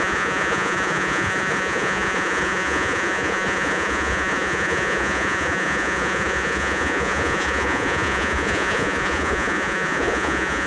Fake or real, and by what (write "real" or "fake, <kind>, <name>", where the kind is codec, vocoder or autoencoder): fake, vocoder, Vocos